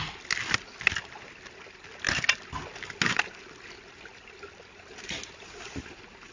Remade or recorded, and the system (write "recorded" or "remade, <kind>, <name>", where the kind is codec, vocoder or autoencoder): recorded